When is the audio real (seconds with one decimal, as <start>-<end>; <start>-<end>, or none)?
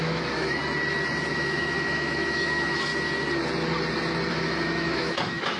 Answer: 0.6-1.3; 2.9-4.3